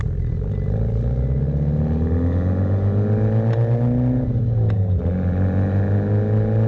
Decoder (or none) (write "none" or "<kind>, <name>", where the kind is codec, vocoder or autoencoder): none